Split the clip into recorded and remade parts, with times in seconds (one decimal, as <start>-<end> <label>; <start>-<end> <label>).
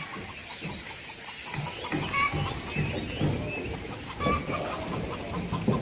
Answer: 0.0-0.4 recorded; 0.4-1.1 remade; 1.1-5.8 recorded